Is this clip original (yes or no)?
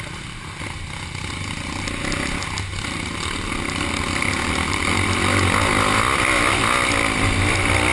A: yes